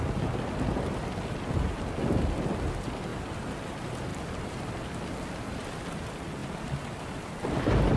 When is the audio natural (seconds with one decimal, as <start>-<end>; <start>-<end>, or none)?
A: 0.0-4.1; 5.4-6.4; 7.6-8.0